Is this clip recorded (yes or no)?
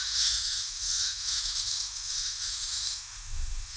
no